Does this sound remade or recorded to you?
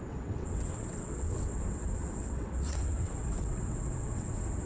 remade